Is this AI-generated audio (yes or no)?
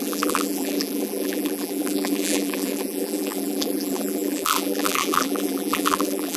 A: yes